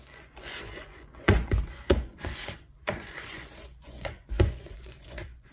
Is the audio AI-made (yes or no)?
yes